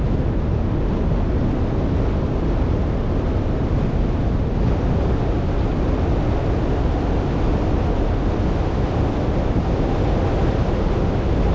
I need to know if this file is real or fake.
real